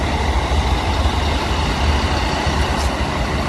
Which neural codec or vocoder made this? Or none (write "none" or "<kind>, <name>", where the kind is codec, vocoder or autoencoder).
none